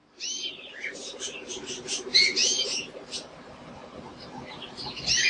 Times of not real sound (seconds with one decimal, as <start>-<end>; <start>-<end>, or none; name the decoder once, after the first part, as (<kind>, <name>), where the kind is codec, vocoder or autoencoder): none

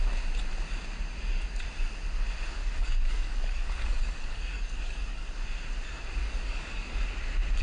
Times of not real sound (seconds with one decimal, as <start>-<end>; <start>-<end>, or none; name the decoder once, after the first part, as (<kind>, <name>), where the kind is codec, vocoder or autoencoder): 2.6-5.3 (codec, DAC); 6.2-7.0